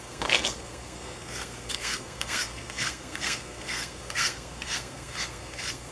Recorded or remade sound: remade